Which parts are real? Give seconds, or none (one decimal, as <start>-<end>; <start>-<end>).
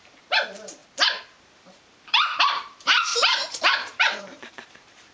0.8-1.4